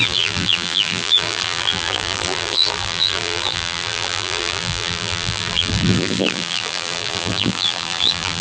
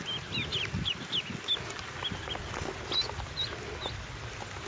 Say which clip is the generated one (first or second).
first